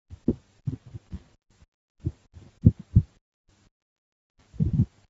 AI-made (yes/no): no